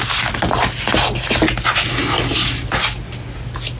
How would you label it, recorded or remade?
recorded